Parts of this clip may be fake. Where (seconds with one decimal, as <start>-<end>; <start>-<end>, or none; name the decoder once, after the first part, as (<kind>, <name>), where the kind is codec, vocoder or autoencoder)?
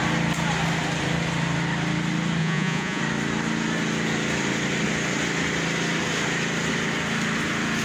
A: 2.4-3.0 (vocoder, Vocos)